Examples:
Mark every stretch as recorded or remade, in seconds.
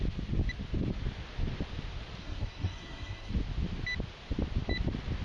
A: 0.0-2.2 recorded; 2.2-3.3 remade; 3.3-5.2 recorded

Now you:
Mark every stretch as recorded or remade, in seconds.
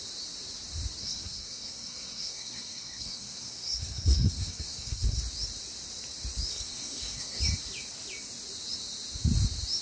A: 0.0-1.0 recorded; 1.0-5.2 remade; 5.2-6.5 recorded; 6.5-7.4 remade; 7.4-9.8 recorded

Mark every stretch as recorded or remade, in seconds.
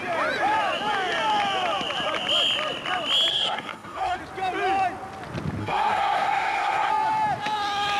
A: 0.0-3.3 recorded; 3.3-4.2 remade; 4.2-5.6 recorded; 5.6-6.9 remade; 6.9-8.0 recorded